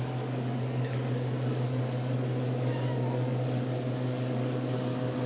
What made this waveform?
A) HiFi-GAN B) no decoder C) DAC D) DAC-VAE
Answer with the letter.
C